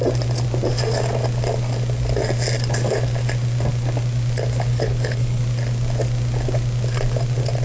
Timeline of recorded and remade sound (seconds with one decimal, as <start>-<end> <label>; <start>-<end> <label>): 0.0-4.7 recorded; 4.7-5.4 remade; 5.4-7.6 recorded